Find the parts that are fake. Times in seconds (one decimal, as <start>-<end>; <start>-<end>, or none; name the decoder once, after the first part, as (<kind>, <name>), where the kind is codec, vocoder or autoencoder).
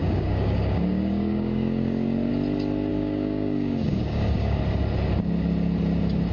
0.0-2.3 (codec, DAC); 2.9-4.6